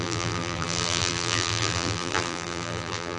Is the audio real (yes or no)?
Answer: no